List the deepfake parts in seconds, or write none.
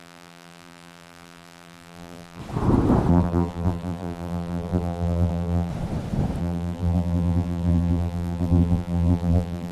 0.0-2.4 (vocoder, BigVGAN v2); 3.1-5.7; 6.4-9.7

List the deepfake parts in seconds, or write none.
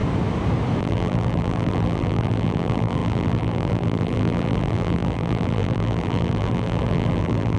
0.8-7.6 (vocoder, BigVGAN v2)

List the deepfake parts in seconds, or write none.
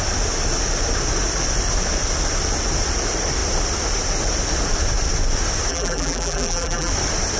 5.7-6.9 (vocoder, BigVGAN v2)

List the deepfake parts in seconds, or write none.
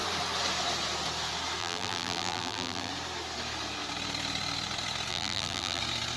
1.6-2.9 (vocoder, BigVGAN v2); 5.1-5.8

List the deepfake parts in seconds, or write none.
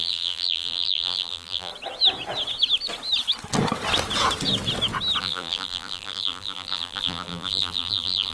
0.0-1.7 (vocoder, BigVGAN v2); 5.2-8.3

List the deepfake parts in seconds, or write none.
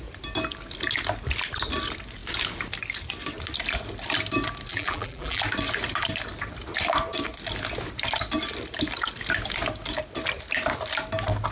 4.7-5.4 (vocoder, BigVGAN v2)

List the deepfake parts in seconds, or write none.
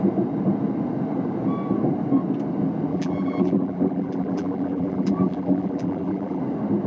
2.9-6.4 (vocoder, BigVGAN v2)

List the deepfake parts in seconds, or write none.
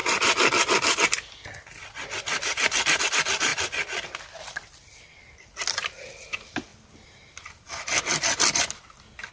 3.0-3.5 (vocoder, BigVGAN v2); 5.2-6.7; 8.6-9.3